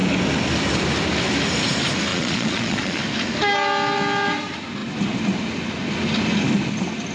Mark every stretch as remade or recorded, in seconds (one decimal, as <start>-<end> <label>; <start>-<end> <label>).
0.0-2.1 recorded; 2.1-3.0 remade; 3.0-7.1 recorded